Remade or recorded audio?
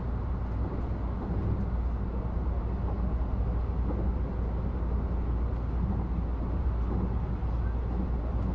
recorded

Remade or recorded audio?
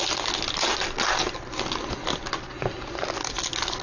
recorded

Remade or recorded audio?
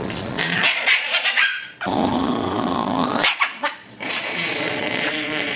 remade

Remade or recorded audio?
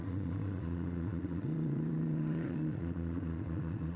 remade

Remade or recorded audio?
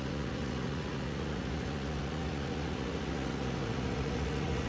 remade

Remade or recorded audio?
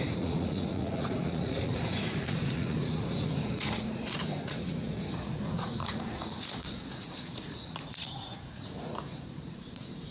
remade